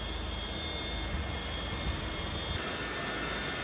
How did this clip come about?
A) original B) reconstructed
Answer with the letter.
A